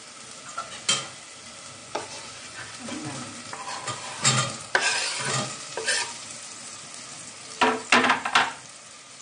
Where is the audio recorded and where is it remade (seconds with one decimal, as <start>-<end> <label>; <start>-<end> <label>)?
0.0-1.8 recorded; 1.8-2.8 remade; 2.8-9.2 recorded